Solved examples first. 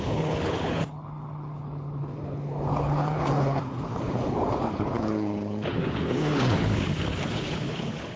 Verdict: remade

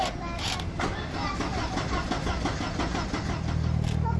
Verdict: recorded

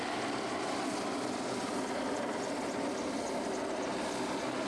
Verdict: recorded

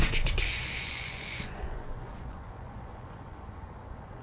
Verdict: remade